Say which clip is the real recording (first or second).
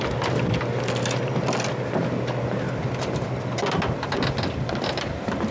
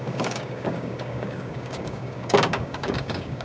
first